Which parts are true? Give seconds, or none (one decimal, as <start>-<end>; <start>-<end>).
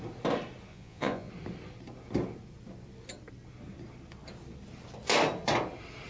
0.0-0.7; 1.3-6.1